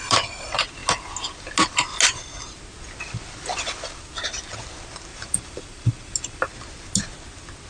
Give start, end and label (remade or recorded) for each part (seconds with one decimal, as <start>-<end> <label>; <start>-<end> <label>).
0.0-5.1 recorded; 5.1-6.5 remade; 6.5-7.7 recorded